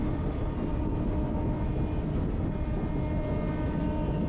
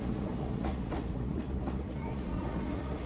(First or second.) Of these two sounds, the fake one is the second